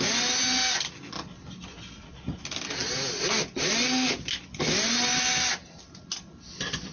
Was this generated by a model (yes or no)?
no